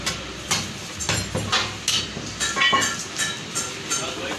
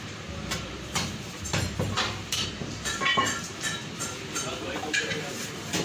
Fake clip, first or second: second